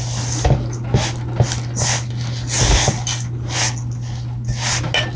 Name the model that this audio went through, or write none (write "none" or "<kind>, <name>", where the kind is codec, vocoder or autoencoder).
none